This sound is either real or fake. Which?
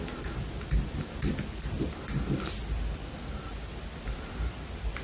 real